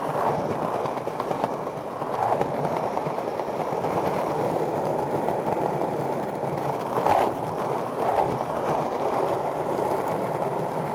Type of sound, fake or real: fake